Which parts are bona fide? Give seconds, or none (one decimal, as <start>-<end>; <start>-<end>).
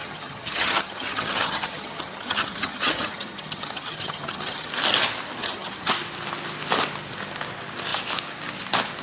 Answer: 4.7-5.4; 5.9-9.0